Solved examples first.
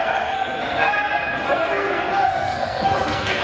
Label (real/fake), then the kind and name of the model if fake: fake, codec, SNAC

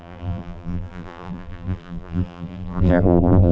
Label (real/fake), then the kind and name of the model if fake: fake, vocoder, BigVGAN v2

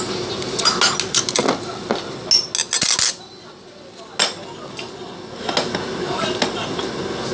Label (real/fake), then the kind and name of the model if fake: real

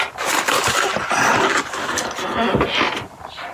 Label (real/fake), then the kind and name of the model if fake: real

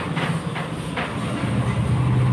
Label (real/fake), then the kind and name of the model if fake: real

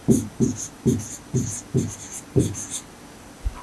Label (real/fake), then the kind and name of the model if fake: real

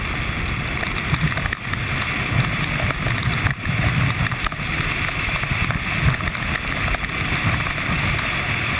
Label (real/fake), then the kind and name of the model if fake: real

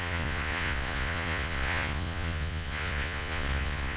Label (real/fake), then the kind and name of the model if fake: fake, vocoder, Vocos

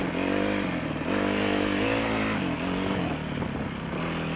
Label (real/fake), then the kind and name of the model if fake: real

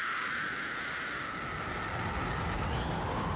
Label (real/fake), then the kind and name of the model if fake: real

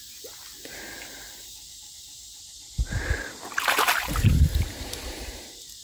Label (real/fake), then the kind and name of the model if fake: fake, vocoder, BigVGAN v2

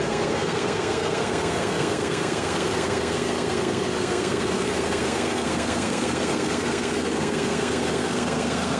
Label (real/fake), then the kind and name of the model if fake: fake, codec, SNAC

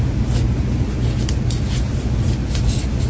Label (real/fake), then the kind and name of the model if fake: real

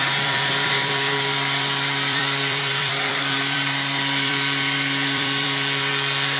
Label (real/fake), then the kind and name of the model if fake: fake, vocoder, BigVGAN v2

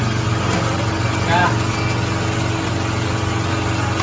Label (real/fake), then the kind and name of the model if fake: real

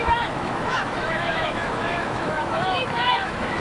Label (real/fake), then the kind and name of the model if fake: fake, autoencoder, DAC-VAE